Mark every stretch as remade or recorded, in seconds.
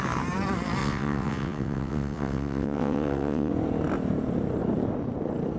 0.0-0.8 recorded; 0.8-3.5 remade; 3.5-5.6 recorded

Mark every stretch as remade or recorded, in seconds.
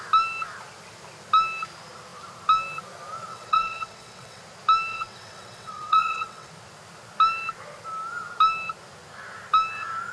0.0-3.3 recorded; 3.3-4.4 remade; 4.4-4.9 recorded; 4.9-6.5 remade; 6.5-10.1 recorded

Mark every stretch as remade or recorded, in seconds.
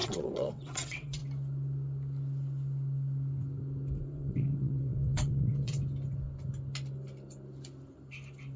0.0-1.2 remade; 1.2-4.0 recorded; 4.0-5.8 remade; 5.8-8.6 recorded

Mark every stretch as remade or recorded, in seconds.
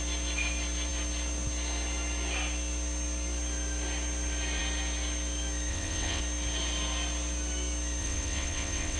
0.0-5.7 recorded; 5.7-6.2 remade; 6.2-8.0 recorded; 8.0-9.0 remade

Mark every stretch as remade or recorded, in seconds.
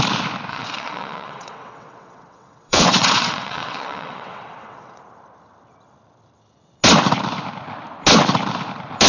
0.0-0.5 recorded; 0.5-5.0 remade; 5.0-9.1 recorded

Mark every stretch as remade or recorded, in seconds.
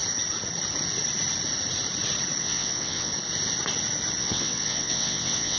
0.0-2.4 recorded; 2.4-3.1 remade; 3.1-4.2 recorded; 4.2-5.6 remade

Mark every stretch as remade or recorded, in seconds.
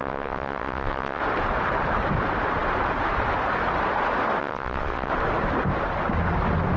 0.0-1.2 remade; 1.2-4.4 recorded; 4.4-5.1 remade; 5.1-6.8 recorded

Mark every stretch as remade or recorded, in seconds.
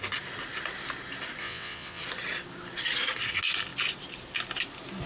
0.0-1.4 recorded; 1.4-2.0 remade; 2.0-5.1 recorded